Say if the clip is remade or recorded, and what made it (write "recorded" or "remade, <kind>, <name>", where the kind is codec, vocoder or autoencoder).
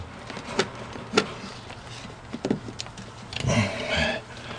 recorded